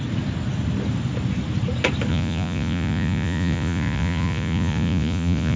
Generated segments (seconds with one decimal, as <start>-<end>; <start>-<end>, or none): 2.1-5.6